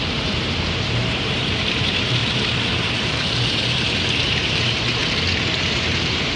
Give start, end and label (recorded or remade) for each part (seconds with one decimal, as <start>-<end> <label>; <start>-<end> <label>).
0.0-2.2 remade; 2.2-2.7 recorded; 2.7-5.0 remade; 5.0-5.7 recorded; 5.7-6.4 remade